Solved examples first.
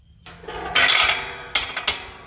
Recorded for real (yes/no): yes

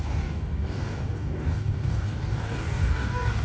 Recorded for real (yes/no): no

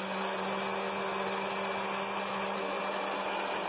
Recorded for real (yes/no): yes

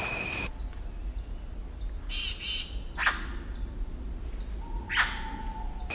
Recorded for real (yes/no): yes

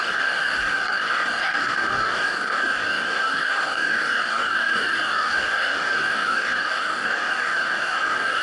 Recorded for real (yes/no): no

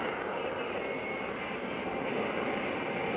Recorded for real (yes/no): yes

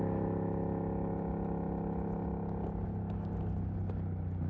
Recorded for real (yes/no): yes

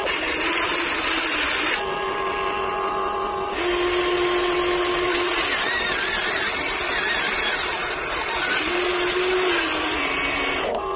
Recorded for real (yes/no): yes